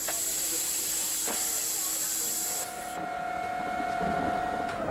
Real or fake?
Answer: real